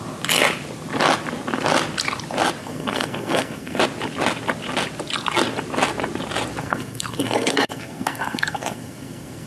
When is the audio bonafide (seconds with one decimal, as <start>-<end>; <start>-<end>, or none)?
0.0-2.6; 3.8-6.6